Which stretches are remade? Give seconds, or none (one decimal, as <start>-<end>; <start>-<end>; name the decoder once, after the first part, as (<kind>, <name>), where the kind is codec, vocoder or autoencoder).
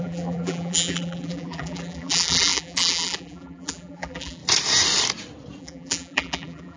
0.0-4.4 (vocoder, BigVGAN v2); 5.6-6.8